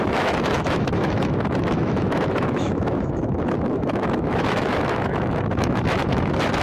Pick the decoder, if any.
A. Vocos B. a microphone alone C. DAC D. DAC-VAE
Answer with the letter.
D